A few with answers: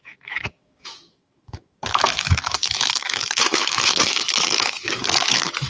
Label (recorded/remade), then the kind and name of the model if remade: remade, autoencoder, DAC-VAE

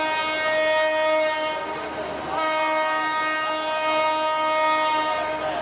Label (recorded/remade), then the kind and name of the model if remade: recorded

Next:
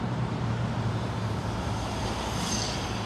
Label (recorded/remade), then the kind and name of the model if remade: remade, vocoder, BigVGAN v2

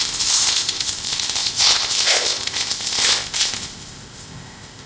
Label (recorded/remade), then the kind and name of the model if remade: remade, codec, ZipCodec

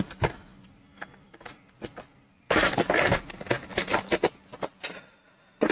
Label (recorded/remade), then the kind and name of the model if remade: recorded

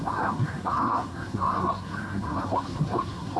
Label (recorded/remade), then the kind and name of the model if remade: remade, codec, SNAC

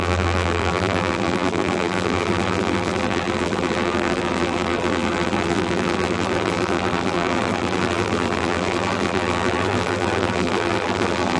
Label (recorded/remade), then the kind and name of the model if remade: remade, vocoder, BigVGAN v2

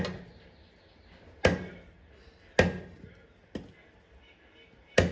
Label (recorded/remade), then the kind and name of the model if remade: recorded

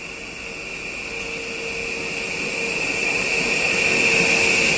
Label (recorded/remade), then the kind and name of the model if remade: recorded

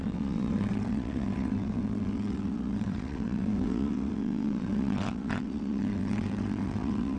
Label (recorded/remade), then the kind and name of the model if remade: remade, vocoder, WaveNeXt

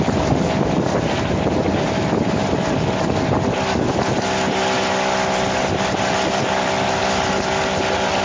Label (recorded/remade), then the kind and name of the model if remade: recorded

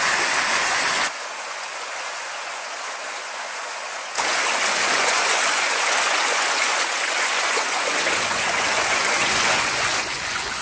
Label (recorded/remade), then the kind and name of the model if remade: remade, vocoder, Vocos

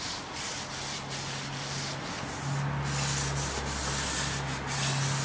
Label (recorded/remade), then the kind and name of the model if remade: recorded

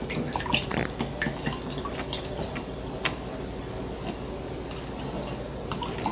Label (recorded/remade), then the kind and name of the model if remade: recorded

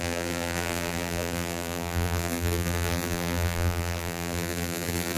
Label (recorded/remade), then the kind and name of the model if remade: remade, vocoder, BigVGAN v2